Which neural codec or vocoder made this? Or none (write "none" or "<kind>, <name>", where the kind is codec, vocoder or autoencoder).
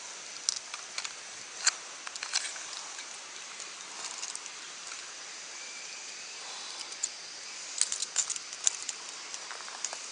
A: none